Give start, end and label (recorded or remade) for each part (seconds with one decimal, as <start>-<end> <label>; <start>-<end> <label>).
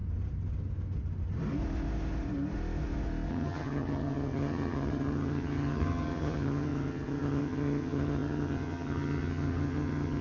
0.0-3.3 recorded; 3.3-10.2 remade